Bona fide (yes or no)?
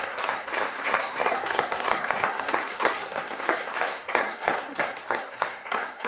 no